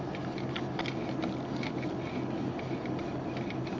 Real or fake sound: real